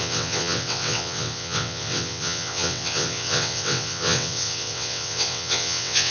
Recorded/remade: remade